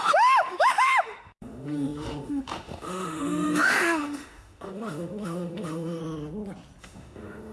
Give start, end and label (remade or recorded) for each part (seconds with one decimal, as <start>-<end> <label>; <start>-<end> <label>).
0.0-6.0 remade; 6.0-6.8 recorded; 6.8-7.5 remade